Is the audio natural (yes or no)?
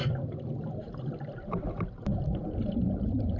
yes